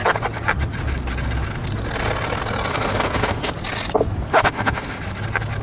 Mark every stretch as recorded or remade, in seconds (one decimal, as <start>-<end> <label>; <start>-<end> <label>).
0.0-2.7 recorded; 2.7-3.5 remade; 3.5-4.3 recorded; 4.3-5.0 remade; 5.0-5.6 recorded